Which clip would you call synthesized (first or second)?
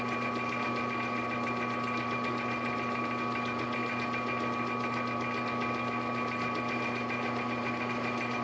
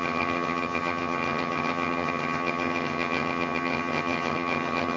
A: second